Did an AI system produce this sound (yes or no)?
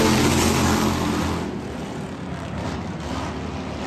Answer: no